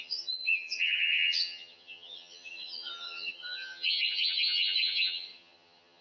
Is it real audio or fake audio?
fake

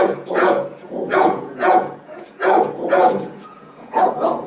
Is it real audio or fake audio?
fake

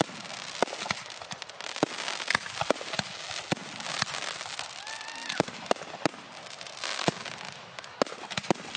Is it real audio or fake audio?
real